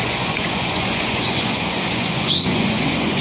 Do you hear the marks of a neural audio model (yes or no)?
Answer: yes